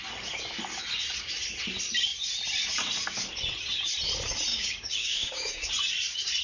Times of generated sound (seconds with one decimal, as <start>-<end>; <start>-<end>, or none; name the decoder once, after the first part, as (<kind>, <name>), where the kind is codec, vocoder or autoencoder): 4.5-5.7 (codec, DAC)